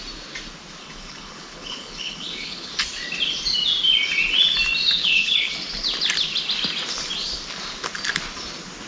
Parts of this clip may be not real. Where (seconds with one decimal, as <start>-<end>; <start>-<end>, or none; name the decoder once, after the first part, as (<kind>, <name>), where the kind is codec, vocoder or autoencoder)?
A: 0.8-2.7 (codec, HILCodec); 5.0-5.5